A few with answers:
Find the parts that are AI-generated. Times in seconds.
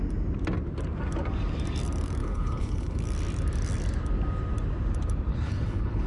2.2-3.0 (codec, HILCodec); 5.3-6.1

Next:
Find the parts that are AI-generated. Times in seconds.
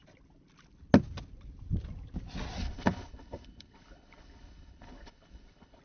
2.6-5.8 (codec, HILCodec)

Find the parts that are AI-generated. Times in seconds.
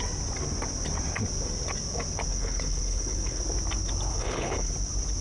2.3-3.4 (codec, HILCodec); 4.1-4.7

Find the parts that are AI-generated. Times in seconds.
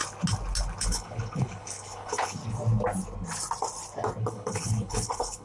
0.8-2.4 (codec, HILCodec); 4.2-5.4